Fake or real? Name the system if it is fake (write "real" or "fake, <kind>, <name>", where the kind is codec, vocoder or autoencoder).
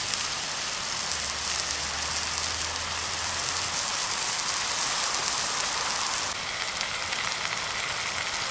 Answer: real